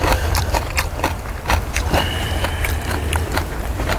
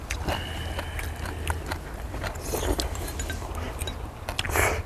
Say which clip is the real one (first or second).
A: second